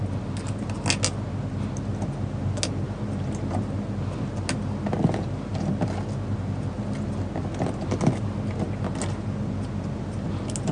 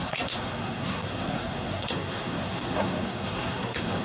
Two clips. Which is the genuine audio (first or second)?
first